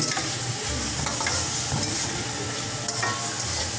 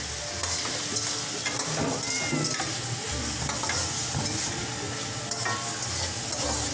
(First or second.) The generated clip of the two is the first